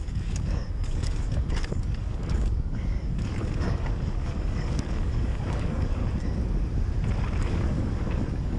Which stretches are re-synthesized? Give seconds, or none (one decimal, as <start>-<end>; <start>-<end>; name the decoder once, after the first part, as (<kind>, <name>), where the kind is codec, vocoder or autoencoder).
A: 0.0-6.0 (codec, DAC); 7.4-8.6